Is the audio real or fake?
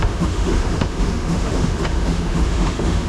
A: fake